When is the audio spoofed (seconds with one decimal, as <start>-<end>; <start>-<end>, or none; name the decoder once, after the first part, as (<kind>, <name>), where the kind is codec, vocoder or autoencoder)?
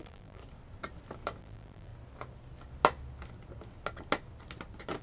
0.0-0.4 (vocoder, BigVGAN v2); 1.4-1.9